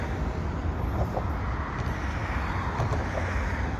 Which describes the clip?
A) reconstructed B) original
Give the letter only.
B